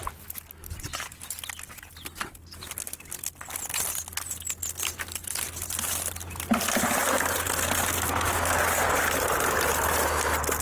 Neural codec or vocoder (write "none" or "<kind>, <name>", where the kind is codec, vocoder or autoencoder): none